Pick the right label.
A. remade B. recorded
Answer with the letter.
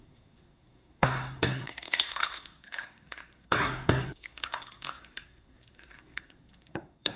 A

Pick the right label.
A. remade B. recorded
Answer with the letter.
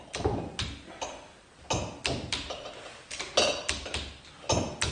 B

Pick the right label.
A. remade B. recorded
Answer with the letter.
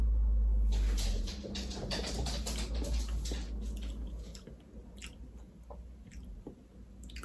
B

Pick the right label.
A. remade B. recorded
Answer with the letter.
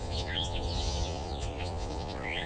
A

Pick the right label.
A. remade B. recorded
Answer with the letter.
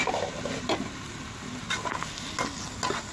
B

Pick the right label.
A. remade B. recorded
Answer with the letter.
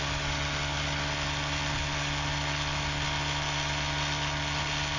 B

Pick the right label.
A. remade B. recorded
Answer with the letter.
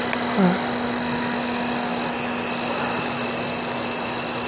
B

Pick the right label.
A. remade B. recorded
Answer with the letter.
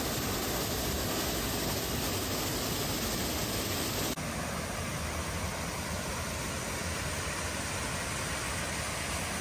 B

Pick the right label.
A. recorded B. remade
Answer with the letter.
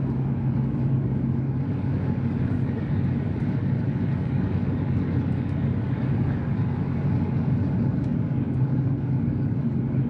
B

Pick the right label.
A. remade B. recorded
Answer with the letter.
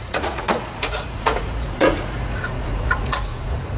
A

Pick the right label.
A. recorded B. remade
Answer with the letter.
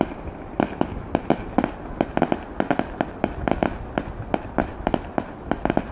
A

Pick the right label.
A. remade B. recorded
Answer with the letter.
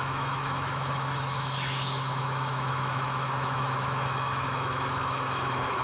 A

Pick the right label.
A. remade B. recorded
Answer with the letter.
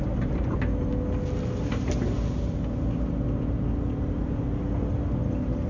B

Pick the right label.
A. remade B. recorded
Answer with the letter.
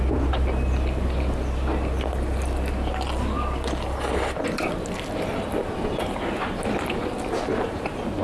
B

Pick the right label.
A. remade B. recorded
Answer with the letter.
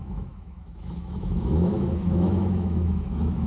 A